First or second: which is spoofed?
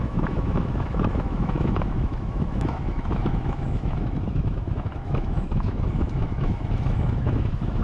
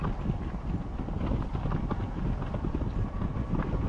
first